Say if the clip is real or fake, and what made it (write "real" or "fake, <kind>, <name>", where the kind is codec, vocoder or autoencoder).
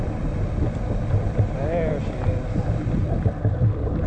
real